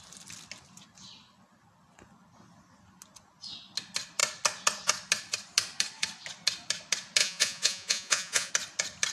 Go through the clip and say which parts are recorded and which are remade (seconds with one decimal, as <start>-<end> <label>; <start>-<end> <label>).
0.0-7.2 recorded; 7.2-8.5 remade; 8.5-9.1 recorded